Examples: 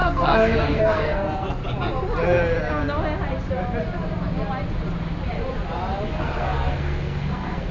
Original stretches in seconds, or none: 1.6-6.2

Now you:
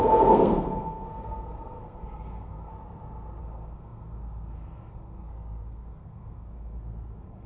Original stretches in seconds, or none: 2.7-3.4

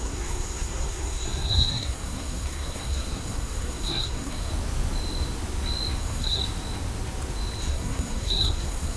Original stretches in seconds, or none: 4.5-6.0; 6.4-7.6

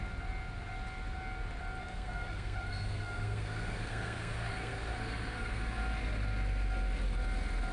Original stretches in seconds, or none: 0.0-1.8; 5.6-7.7